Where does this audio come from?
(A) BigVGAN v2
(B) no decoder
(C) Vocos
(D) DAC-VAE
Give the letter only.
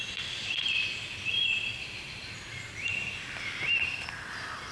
A